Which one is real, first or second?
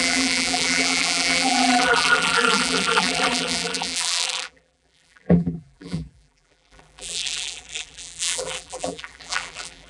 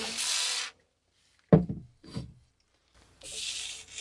second